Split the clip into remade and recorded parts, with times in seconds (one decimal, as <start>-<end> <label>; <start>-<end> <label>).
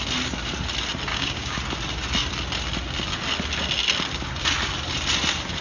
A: 0.0-1.1 recorded; 1.1-1.6 remade; 1.6-5.6 recorded